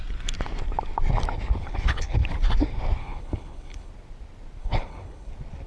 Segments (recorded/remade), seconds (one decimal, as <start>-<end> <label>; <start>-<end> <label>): 0.0-1.6 recorded; 1.6-2.3 remade; 2.3-3.0 recorded; 3.0-3.9 remade; 3.9-4.6 recorded; 4.6-5.3 remade; 5.3-5.7 recorded